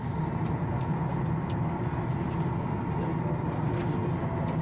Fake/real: real